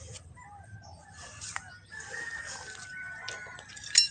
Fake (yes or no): no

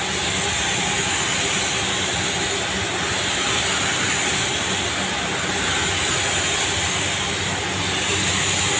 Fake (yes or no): no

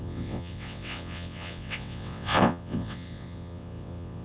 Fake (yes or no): yes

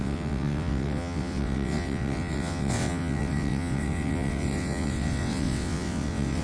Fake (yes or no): yes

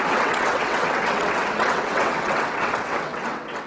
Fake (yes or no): yes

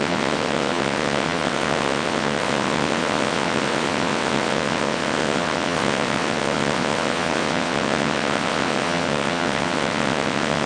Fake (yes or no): yes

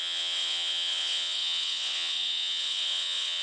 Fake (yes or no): yes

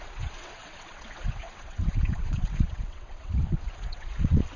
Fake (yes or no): yes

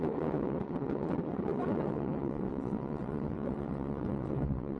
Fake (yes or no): yes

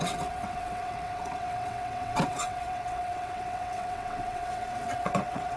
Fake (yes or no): yes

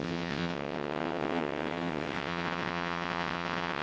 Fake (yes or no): yes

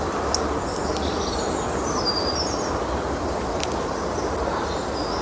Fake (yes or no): no